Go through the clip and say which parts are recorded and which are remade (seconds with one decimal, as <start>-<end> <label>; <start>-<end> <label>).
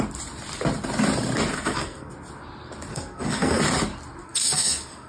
0.0-1.5 recorded; 1.5-2.1 remade; 2.1-2.9 recorded; 2.9-3.6 remade; 3.6-4.2 recorded; 4.2-5.1 remade